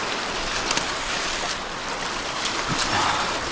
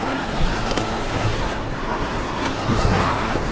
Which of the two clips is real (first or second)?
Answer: first